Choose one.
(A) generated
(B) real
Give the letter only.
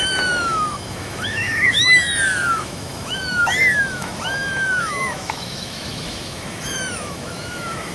A